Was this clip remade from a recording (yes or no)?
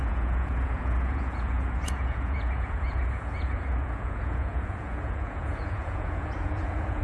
yes